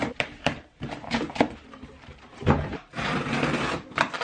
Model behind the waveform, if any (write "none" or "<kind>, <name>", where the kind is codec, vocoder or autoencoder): vocoder, BigVGAN v2